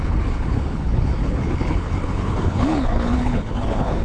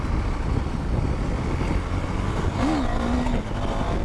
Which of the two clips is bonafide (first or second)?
second